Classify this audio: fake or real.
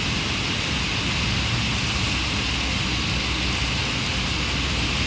real